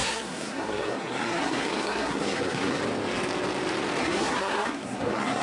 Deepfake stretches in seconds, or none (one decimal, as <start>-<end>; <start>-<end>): 0.0-2.8; 4.0-5.4